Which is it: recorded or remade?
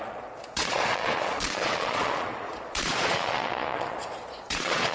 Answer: remade